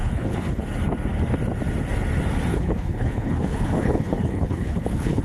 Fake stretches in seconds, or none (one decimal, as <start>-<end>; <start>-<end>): 0.0-0.6; 2.5-5.2